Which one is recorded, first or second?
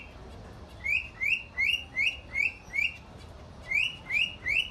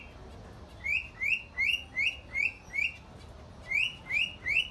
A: second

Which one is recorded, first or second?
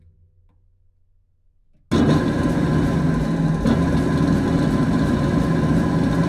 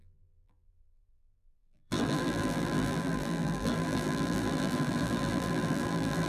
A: first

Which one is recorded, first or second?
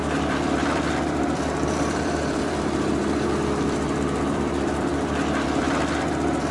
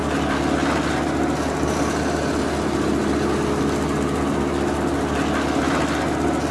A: second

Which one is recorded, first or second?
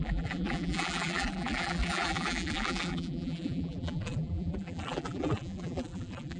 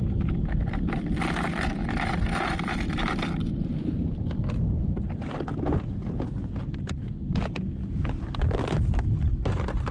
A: second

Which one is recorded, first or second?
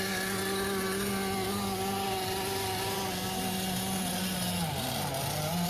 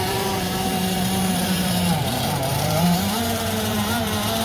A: first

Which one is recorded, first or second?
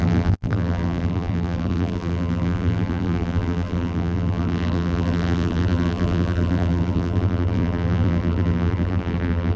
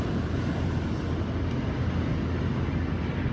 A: second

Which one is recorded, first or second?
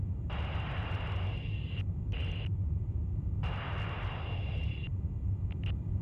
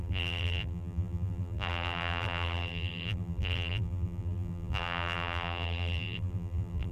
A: first